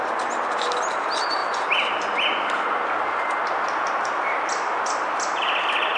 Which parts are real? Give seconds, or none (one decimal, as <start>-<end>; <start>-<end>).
0.0-6.0